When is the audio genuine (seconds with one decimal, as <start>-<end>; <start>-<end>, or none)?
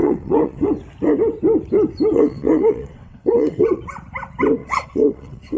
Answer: 0.7-2.1; 3.8-4.6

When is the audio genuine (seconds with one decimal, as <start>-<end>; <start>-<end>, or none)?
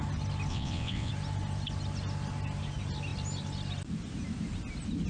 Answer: 0.0-0.5; 1.1-5.1